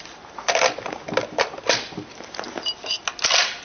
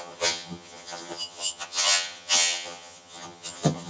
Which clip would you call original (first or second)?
first